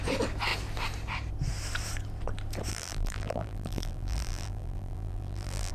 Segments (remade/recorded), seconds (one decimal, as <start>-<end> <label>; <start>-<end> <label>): 0.0-2.7 recorded; 2.7-5.7 remade